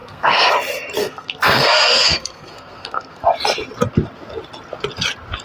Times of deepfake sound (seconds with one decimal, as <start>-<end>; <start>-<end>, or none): 0.0-0.5; 1.0-3.2